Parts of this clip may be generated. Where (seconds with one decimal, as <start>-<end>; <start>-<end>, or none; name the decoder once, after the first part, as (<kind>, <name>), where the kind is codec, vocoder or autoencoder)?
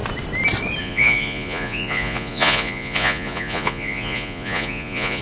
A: 0.8-5.2 (vocoder, Vocos)